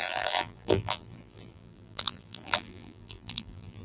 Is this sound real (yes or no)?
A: no